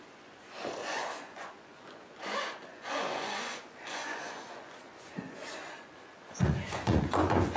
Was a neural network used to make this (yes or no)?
yes